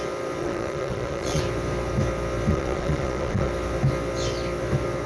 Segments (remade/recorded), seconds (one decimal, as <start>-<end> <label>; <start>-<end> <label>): 0.0-0.4 recorded; 0.4-1.4 remade; 1.4-2.5 recorded; 2.5-3.5 remade; 3.5-5.1 recorded